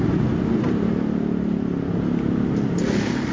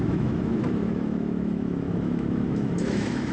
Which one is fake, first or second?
second